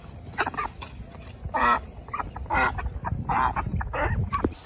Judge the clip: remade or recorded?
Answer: recorded